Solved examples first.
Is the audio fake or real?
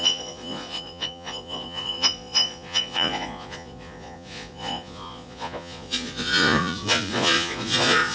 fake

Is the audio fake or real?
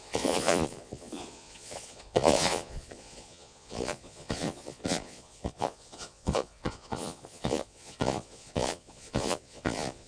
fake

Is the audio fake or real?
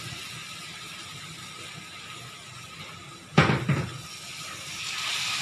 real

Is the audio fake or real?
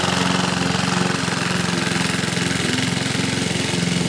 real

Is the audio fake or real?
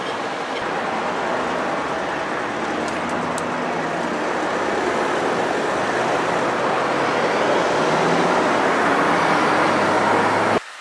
real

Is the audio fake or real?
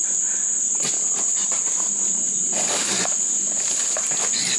real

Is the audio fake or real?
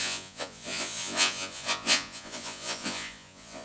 fake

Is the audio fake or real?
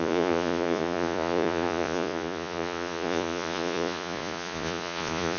fake